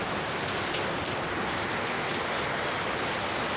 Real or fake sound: real